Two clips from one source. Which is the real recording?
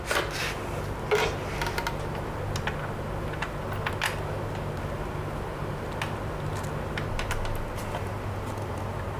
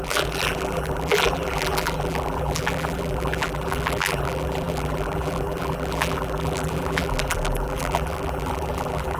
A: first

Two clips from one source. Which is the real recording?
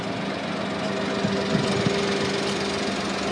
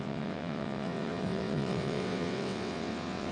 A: first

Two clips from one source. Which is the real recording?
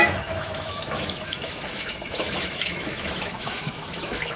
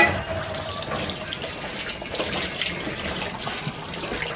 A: second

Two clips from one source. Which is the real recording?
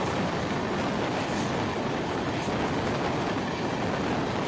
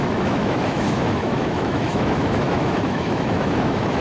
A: first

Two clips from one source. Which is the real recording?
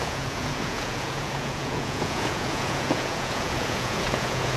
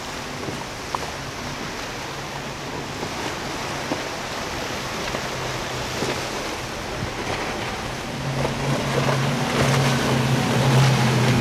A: second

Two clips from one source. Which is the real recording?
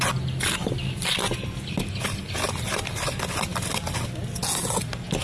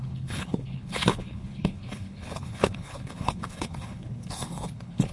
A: first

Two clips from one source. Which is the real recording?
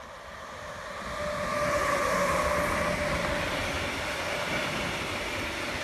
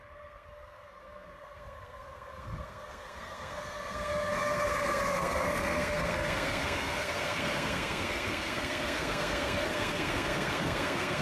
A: first